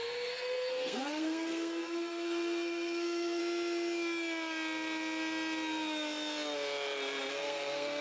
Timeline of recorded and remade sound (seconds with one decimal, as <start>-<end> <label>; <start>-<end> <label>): 0.0-3.4 remade; 3.4-7.3 recorded; 7.3-8.0 remade